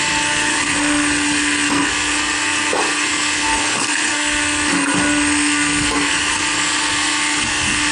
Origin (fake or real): fake